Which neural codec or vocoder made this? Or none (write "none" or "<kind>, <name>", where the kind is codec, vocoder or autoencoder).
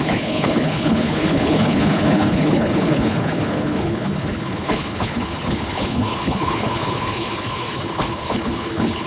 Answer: codec, HILCodec